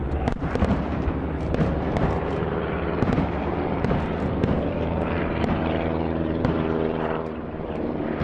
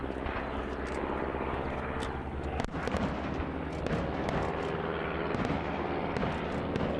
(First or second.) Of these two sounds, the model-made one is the first